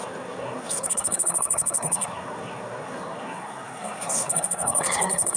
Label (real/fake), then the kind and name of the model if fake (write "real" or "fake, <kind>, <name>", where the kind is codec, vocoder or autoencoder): fake, codec, SNAC